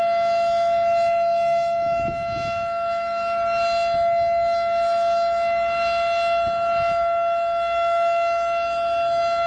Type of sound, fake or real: real